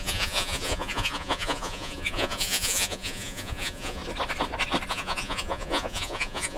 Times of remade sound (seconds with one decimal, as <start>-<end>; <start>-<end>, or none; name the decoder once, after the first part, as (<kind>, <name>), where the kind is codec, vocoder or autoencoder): 0.0-4.0 (vocoder, Vocos); 4.9-6.6